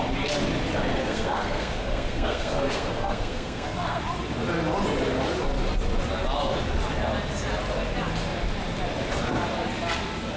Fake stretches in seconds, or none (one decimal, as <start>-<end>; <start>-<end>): 0.9-4.0